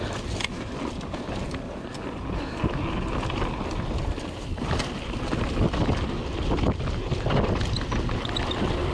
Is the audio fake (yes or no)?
no